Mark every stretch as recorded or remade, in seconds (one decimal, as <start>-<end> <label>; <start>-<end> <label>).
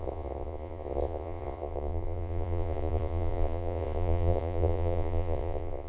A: 0.0-5.9 remade